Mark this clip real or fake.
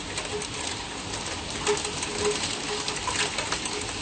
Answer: real